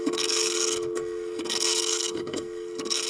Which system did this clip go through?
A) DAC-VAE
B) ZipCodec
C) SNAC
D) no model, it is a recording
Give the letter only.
C